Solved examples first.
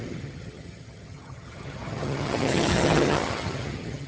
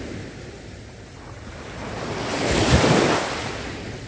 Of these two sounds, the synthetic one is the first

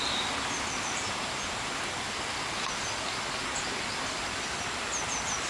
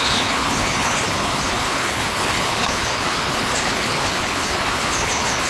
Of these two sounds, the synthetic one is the second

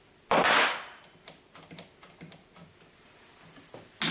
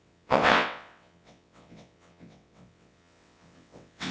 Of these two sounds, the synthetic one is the second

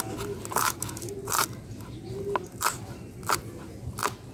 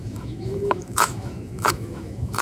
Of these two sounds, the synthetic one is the second